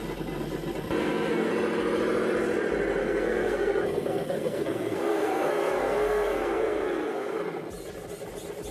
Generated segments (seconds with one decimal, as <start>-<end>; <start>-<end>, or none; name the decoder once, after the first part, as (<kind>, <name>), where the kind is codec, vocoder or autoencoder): 1.0-1.5 (codec, SNAC); 3.0-7.4